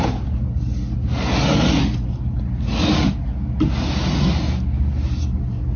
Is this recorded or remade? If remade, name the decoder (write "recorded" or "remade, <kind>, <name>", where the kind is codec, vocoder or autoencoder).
recorded